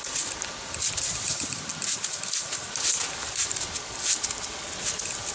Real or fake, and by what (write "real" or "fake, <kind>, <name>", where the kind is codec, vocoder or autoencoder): real